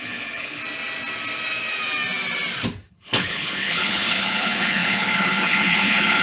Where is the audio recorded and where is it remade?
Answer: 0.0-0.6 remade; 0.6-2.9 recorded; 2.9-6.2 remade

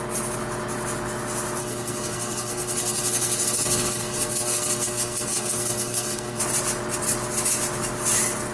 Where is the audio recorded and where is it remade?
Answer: 0.0-1.6 recorded; 1.6-6.4 remade; 6.4-8.5 recorded

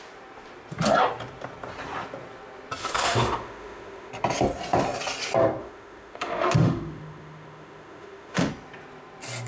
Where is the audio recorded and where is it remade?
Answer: 0.0-2.8 recorded; 2.8-4.1 remade; 4.1-5.6 recorded; 5.6-8.5 remade; 8.5-9.5 recorded